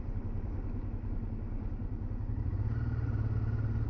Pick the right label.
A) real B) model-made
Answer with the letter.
A